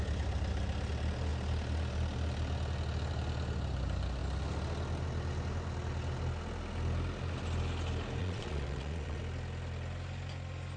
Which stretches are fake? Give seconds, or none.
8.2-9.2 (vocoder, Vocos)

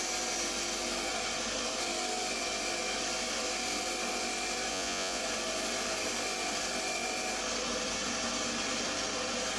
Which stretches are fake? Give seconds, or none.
4.7-5.2 (vocoder, Vocos)